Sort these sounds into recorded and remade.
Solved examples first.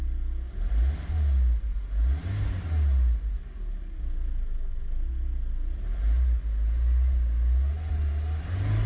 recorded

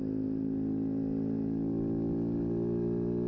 recorded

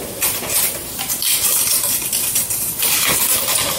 recorded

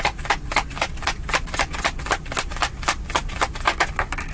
recorded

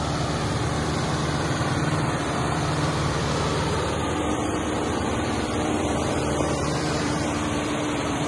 remade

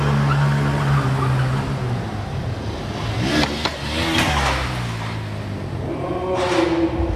recorded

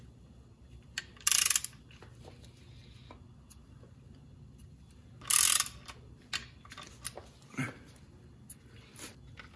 recorded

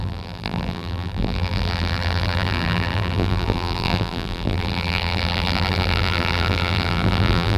remade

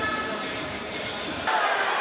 remade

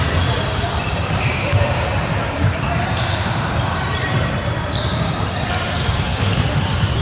remade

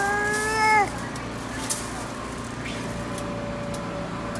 recorded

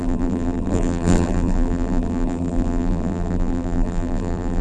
remade